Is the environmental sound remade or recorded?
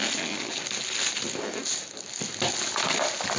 recorded